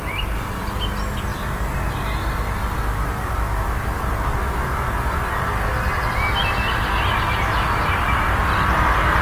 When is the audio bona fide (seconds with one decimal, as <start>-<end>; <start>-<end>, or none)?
0.0-9.2